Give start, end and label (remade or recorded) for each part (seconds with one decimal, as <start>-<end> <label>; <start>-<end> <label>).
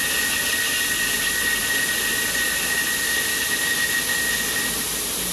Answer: 0.0-5.3 recorded